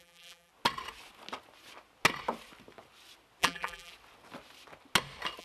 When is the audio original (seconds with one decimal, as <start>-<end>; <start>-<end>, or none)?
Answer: 0.5-3.4; 3.9-5.4